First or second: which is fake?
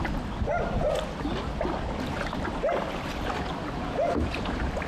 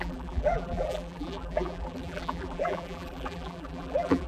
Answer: second